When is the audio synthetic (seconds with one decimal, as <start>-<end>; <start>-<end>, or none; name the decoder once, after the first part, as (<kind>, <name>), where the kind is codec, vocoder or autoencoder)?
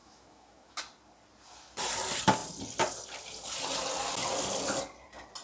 0.0-0.8 (autoencoder, DAC-VAE)